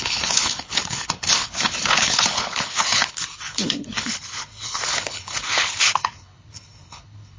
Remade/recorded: remade